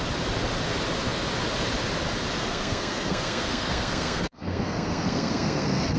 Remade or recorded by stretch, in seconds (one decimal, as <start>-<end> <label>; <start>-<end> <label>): 0.0-2.4 recorded; 2.4-6.0 remade